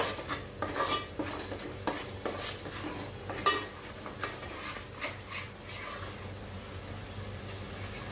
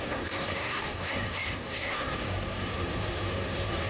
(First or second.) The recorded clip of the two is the first